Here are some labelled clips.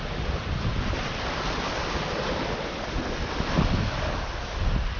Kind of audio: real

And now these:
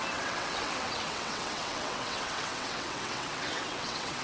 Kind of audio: fake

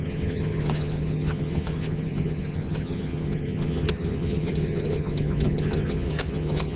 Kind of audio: fake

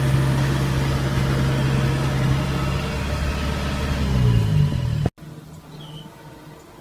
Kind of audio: real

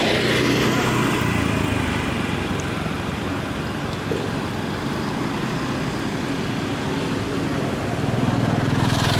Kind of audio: real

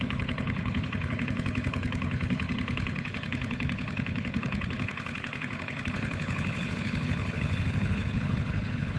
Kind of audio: fake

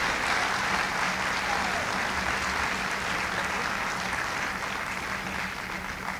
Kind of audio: real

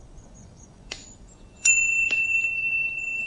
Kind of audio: fake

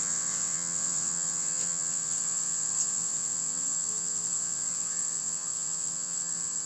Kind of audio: fake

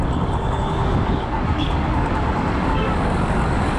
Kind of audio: fake